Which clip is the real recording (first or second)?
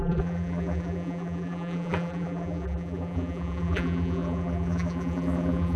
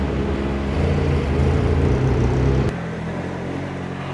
second